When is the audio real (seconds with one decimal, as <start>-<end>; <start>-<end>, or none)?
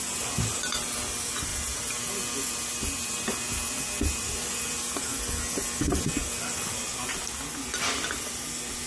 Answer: 0.0-8.9